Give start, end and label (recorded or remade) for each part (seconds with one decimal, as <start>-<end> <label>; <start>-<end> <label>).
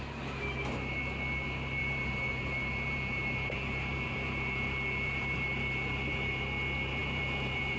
0.0-1.8 recorded; 1.8-6.4 remade; 6.4-7.0 recorded; 7.0-7.8 remade